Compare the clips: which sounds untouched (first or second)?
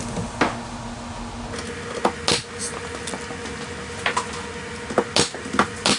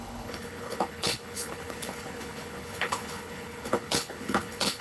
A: first